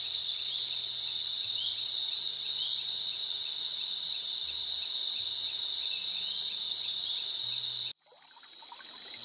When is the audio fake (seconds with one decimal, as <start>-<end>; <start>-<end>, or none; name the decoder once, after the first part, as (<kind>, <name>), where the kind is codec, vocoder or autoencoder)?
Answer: none